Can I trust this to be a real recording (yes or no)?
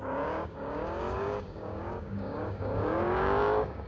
no